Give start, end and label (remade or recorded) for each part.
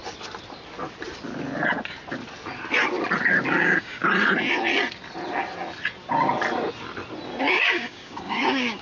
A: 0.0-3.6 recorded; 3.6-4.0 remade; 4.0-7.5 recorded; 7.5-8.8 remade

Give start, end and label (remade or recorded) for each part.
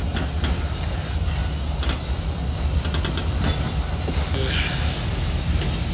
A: 0.0-5.9 recorded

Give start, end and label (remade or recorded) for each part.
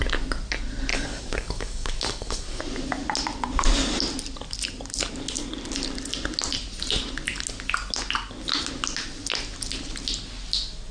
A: 0.0-0.9 recorded; 0.9-2.6 remade; 2.6-10.9 recorded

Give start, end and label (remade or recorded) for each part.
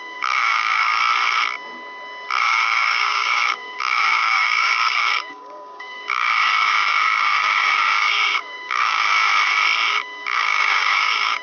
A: 0.0-1.0 remade; 1.0-2.4 recorded; 2.4-9.1 remade; 9.1-9.9 recorded; 9.9-11.4 remade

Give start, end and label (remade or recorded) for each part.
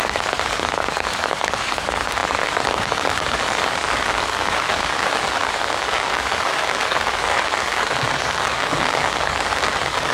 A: 0.0-10.1 remade